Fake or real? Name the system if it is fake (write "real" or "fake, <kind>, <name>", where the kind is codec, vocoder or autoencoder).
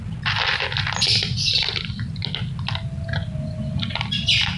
real